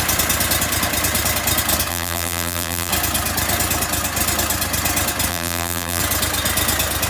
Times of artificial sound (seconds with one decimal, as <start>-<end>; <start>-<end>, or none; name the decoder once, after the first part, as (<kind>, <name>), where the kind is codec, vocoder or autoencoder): 1.9-2.9 (vocoder, BigVGAN v2); 5.3-6.0